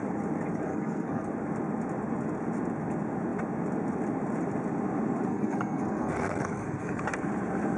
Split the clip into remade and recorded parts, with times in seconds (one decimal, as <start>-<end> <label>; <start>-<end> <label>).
0.0-0.7 recorded; 0.7-1.3 remade; 1.3-5.3 recorded; 5.3-7.0 remade; 7.0-7.8 recorded

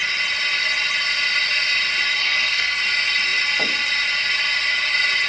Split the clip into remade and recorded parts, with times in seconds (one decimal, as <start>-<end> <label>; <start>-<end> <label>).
0.0-2.2 recorded; 2.2-2.8 remade; 2.8-5.3 recorded

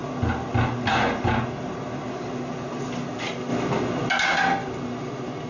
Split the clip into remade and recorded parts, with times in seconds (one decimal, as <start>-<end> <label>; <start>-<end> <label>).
0.0-5.5 recorded

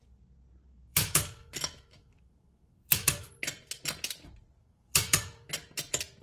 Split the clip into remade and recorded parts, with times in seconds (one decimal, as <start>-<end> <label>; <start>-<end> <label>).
0.0-0.6 recorded; 0.6-3.3 remade; 3.3-4.6 recorded; 4.6-5.5 remade; 5.5-6.2 recorded

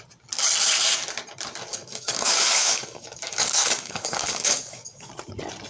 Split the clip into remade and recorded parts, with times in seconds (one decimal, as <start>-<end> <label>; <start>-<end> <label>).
0.0-1.7 recorded; 1.7-5.1 remade; 5.1-5.7 recorded

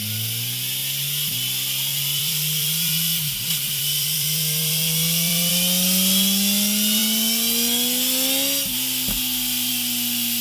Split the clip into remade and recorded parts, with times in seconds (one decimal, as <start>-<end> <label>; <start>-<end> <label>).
0.0-1.9 recorded; 1.9-5.5 remade; 5.5-10.4 recorded

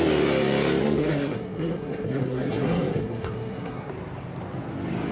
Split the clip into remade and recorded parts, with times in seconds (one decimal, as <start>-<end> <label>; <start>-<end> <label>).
0.0-0.8 recorded; 0.8-3.9 remade; 3.9-5.1 recorded

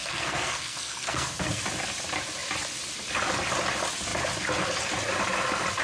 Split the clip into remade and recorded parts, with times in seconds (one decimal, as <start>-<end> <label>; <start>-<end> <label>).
0.0-1.6 remade; 1.6-5.8 recorded